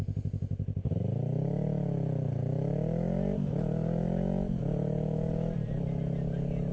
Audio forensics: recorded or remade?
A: recorded